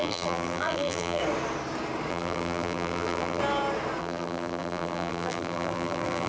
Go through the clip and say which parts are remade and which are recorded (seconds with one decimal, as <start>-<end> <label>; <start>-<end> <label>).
0.0-1.2 remade; 1.2-2.1 recorded; 2.1-3.4 remade; 3.4-4.0 recorded; 4.0-6.3 remade